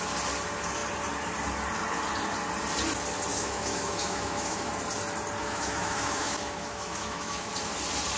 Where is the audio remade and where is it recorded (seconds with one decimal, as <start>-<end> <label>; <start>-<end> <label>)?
0.0-3.3 recorded; 3.3-4.7 remade; 4.7-5.4 recorded; 5.4-7.5 remade; 7.5-8.2 recorded